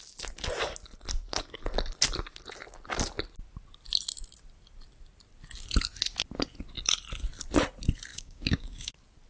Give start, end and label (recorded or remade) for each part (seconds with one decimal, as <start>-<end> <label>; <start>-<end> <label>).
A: 0.0-8.1 recorded; 8.1-8.9 remade; 8.9-9.3 recorded